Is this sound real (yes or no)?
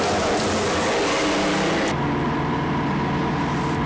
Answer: yes